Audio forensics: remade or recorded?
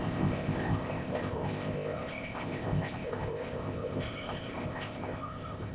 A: remade